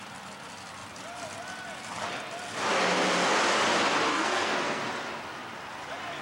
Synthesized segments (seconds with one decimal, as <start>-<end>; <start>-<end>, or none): 4.1-4.9